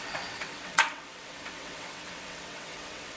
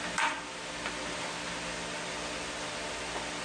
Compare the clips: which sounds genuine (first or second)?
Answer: second